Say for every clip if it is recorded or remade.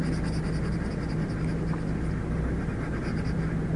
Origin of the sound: recorded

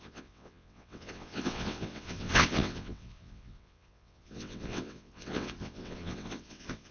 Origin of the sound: remade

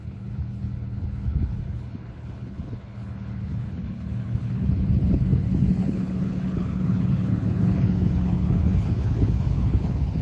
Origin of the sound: remade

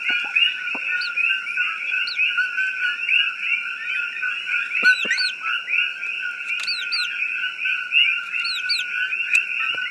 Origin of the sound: recorded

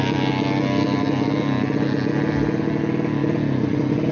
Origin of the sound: recorded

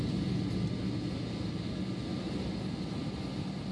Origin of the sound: recorded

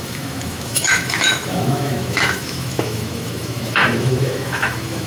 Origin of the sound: remade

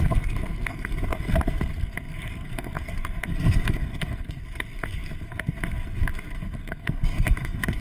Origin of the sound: remade